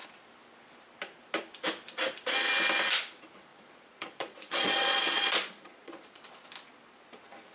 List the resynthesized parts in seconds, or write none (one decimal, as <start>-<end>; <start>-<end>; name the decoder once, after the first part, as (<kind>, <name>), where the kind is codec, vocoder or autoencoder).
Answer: 3.5-6.2 (vocoder, Vocos)